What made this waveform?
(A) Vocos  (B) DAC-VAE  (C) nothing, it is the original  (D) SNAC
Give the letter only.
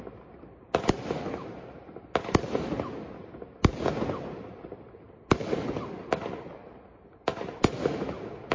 C